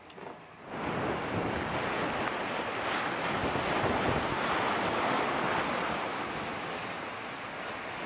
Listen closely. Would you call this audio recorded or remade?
recorded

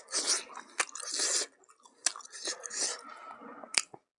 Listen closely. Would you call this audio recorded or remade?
recorded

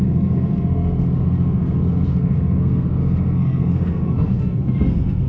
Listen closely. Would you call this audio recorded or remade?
remade